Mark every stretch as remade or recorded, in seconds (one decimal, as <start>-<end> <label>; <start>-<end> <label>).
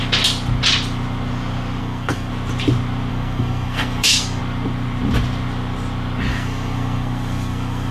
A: 0.0-1.8 recorded; 1.8-2.3 remade; 2.3-3.1 recorded; 3.1-4.4 remade; 4.4-6.3 recorded; 6.3-7.9 remade